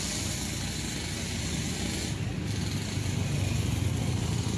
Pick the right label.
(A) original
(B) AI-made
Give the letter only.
A